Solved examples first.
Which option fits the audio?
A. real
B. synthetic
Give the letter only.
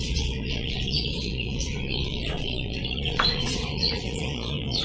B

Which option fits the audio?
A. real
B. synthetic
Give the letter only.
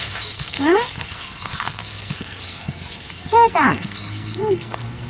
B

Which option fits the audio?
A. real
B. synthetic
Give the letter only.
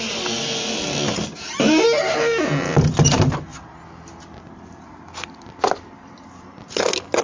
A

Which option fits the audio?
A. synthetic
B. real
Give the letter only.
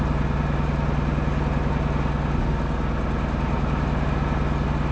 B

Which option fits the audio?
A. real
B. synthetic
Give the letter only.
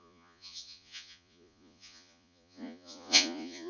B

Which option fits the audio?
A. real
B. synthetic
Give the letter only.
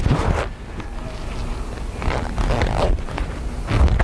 A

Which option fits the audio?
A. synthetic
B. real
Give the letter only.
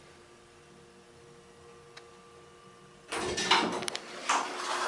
B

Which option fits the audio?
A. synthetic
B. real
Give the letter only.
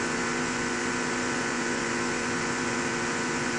A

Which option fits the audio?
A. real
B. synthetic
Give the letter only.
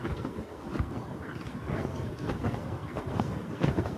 B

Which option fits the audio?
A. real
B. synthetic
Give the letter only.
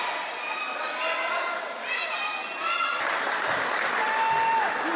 A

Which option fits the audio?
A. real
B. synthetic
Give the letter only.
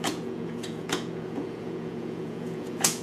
B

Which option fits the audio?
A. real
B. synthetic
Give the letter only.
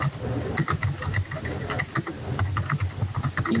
A